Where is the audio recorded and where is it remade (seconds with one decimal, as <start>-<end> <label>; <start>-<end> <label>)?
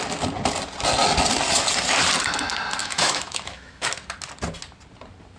0.0-2.8 recorded; 2.8-3.9 remade; 3.9-5.4 recorded